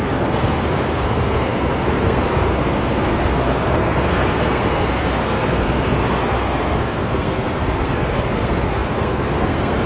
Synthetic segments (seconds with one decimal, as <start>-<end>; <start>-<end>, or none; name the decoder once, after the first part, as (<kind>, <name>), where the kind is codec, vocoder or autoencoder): 0.0-9.9 (codec, SNAC)

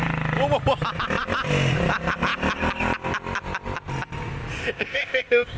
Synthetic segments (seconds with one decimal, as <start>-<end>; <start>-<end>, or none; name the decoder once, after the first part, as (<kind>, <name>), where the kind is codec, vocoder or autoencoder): 4.6-5.6 (codec, ZipCodec)

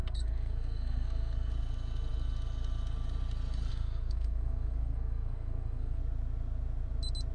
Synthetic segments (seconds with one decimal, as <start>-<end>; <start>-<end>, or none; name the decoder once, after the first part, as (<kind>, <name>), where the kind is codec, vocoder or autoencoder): 0.0-1.5 (codec, SNAC); 3.7-6.0

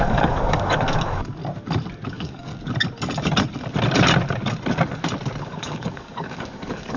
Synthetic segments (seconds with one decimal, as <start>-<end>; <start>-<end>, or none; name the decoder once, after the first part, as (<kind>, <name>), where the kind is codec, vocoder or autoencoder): 0.0-1.4 (codec, DAC); 2.1-2.5; 5.4-7.0